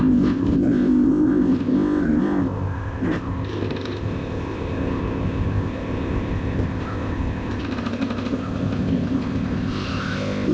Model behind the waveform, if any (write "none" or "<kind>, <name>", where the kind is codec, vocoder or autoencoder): codec, ZipCodec